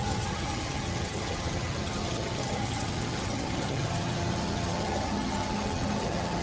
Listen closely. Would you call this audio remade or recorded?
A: remade